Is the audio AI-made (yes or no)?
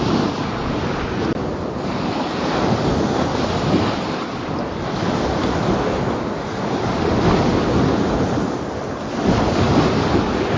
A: no